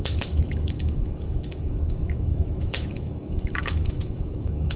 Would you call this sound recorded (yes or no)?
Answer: no